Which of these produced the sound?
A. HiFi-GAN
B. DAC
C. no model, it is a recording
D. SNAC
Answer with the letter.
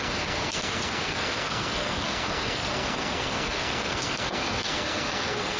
D